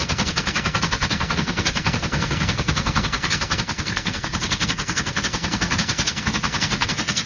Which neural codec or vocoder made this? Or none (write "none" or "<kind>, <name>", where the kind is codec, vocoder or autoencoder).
codec, SNAC